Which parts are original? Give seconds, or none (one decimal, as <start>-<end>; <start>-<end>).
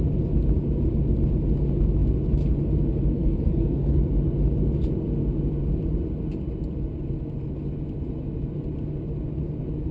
0.0-3.1; 4.0-9.9